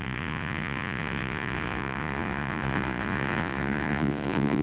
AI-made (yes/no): yes